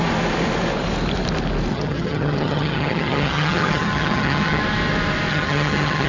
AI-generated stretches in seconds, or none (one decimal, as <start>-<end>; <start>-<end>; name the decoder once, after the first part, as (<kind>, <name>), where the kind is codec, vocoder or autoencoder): 1.7-4.6 (vocoder, HiFi-GAN); 5.3-6.1